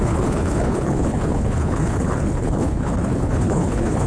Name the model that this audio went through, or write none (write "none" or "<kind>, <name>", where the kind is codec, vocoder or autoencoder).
codec, HILCodec